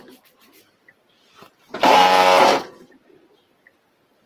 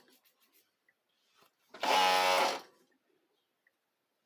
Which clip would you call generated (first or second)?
first